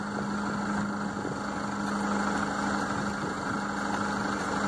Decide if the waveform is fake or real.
real